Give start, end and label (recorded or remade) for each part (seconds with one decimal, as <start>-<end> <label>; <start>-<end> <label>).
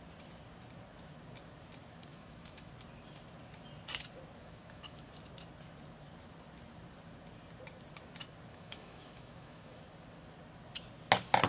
0.0-2.1 recorded; 2.1-2.7 remade; 2.7-4.4 recorded; 4.4-5.0 remade; 5.0-8.5 recorded; 8.5-9.8 remade; 9.8-11.5 recorded